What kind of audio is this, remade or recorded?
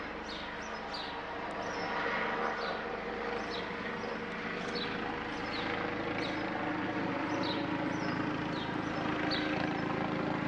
recorded